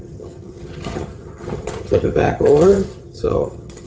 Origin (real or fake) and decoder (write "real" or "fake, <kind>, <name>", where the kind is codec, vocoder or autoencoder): fake, vocoder, HiFi-GAN